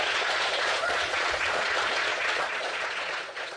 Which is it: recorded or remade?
remade